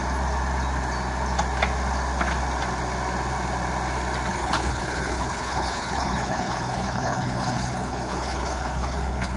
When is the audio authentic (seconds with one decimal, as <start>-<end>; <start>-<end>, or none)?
0.0-4.3